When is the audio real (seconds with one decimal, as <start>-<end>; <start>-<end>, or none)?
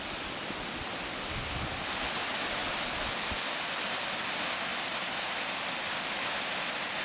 0.0-7.0